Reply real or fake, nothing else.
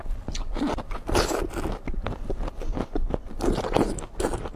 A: real